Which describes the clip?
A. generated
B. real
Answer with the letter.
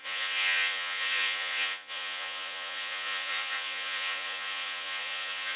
A